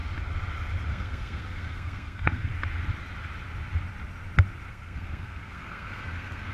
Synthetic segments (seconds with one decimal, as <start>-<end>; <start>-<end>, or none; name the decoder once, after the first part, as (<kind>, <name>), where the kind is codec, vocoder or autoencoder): 0.9-2.5 (codec, SNAC); 4.7-6.5